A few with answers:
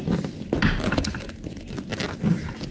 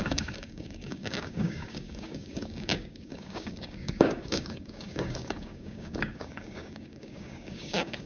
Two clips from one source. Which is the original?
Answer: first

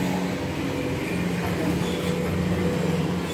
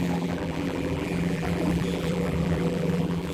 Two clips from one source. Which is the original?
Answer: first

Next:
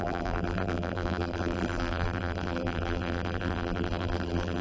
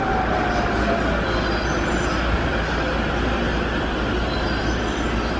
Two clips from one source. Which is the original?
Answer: second